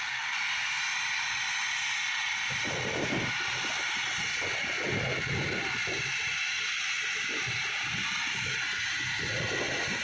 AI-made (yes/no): no